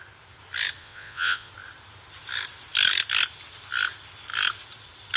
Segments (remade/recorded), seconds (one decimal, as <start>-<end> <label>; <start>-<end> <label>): 0.0-0.8 recorded; 0.8-1.5 remade; 1.5-5.2 recorded